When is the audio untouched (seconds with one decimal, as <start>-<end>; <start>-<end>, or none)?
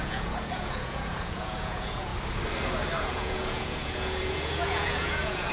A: 2.1-3.0